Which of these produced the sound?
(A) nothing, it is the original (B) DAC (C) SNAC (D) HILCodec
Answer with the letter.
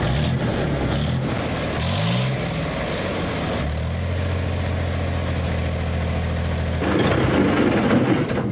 A